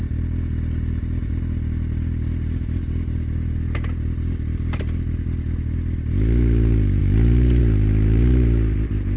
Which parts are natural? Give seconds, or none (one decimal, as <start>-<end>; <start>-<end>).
0.0-9.2